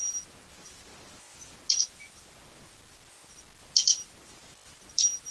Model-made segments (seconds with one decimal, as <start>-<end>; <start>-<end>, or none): none